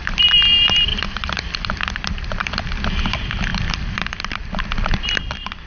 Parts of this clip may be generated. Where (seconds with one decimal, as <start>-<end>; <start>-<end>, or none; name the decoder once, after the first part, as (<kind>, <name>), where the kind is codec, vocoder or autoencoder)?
0.9-2.7 (vocoder, BigVGAN v2); 3.5-4.6